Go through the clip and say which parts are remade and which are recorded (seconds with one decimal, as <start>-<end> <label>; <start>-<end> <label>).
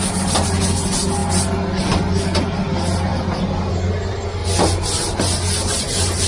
0.0-6.3 recorded